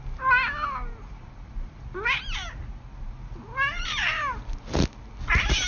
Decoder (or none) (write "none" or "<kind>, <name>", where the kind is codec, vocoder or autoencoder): none